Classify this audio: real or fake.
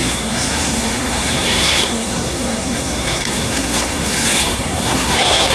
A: fake